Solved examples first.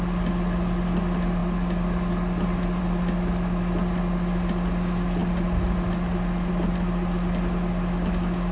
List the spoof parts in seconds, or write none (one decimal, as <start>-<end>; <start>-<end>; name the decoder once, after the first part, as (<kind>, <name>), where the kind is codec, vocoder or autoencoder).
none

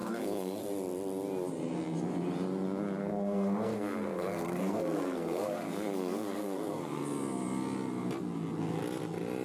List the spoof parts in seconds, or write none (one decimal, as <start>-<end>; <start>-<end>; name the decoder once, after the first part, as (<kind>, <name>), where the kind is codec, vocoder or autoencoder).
0.0-0.6 (codec, SNAC); 3.0-7.0

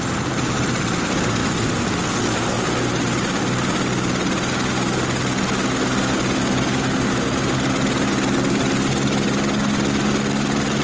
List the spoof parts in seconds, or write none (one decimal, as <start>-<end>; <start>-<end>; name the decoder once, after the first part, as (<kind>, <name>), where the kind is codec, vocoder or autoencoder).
none

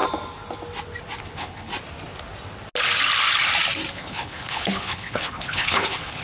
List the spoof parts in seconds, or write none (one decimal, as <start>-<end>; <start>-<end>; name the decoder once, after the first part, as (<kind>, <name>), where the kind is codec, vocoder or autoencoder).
1.2-1.7 (codec, HILCodec); 3.9-6.2